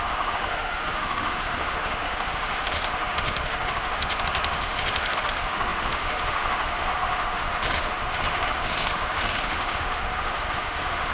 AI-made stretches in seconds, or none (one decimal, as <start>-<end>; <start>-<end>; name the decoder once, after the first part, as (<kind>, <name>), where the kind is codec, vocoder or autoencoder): 0.0-11.1 (autoencoder, DAC-VAE)